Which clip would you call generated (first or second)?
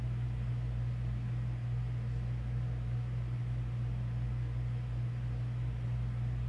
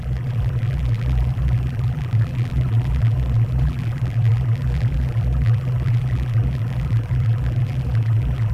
second